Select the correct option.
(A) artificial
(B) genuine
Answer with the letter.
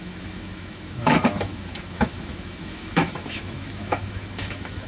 A